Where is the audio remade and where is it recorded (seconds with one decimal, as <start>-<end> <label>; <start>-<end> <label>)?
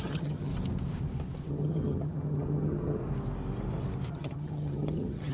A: 0.0-0.5 remade; 0.5-1.5 recorded; 1.5-3.0 remade; 3.0-4.1 recorded; 4.1-5.3 remade